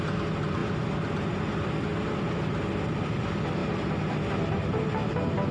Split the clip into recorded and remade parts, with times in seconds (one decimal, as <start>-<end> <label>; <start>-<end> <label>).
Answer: 0.0-1.9 recorded; 1.9-2.7 remade; 2.7-3.6 recorded; 3.6-4.1 remade; 4.1-5.5 recorded